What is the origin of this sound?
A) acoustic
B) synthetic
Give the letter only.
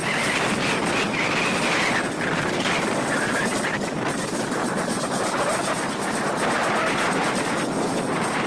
A